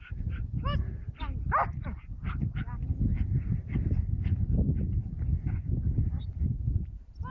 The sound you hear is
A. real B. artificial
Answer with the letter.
A